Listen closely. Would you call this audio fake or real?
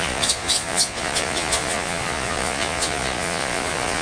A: fake